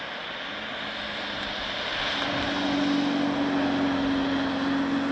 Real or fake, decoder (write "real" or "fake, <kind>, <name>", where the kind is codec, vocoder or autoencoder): real